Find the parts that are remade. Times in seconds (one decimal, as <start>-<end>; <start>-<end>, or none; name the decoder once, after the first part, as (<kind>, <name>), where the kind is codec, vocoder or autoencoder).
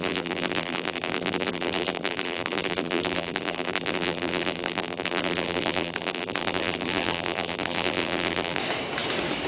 0.0-8.6 (vocoder, BigVGAN v2)